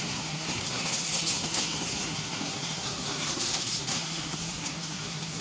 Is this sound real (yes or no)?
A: no